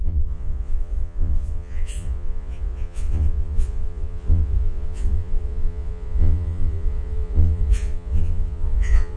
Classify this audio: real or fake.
fake